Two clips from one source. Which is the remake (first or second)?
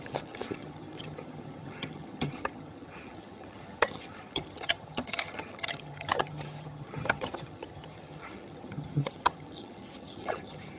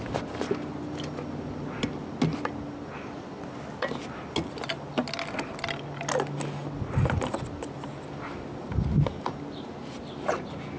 first